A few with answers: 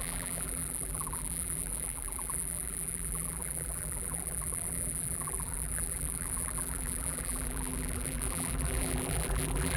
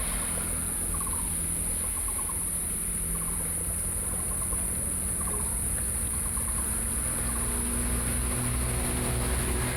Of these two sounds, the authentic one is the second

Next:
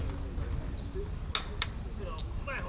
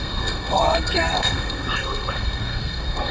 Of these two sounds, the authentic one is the first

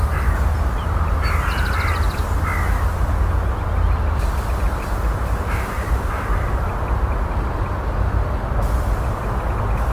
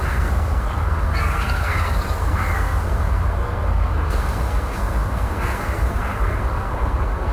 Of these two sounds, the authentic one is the first